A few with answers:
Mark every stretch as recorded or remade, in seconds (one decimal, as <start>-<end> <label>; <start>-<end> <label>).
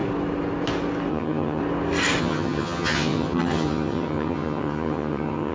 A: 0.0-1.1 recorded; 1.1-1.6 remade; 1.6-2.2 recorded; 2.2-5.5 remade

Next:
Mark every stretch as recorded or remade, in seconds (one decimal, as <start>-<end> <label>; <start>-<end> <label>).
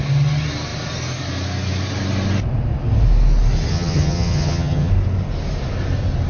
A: 0.0-3.7 recorded; 3.7-4.9 remade; 4.9-6.3 recorded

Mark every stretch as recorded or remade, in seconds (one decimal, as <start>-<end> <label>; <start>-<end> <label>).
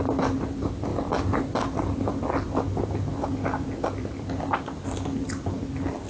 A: 0.0-6.1 recorded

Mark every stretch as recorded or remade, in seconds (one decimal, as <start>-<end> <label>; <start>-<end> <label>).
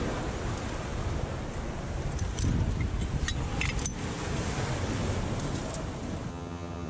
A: 0.0-6.3 recorded; 6.3-6.9 remade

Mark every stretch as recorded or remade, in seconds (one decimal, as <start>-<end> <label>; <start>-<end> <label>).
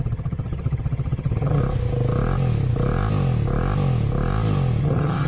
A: 0.0-1.6 remade; 1.6-4.8 recorded; 4.8-5.3 remade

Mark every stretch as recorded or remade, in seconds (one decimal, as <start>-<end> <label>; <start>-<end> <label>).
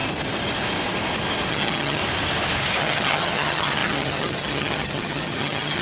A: 0.0-1.5 recorded; 1.5-2.0 remade; 2.0-2.8 recorded; 2.8-5.8 remade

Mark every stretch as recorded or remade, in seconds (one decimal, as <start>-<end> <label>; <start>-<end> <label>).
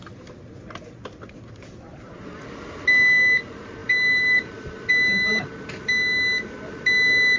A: 0.0-7.4 recorded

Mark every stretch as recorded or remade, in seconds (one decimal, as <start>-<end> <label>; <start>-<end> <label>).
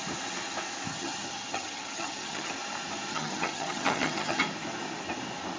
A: 0.0-0.9 recorded; 0.9-2.5 remade; 2.5-3.1 recorded; 3.1-4.4 remade; 4.4-5.6 recorded